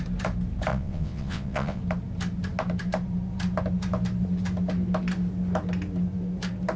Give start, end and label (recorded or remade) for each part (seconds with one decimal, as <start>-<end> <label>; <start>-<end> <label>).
0.0-0.7 recorded; 0.7-1.8 remade; 1.8-6.8 recorded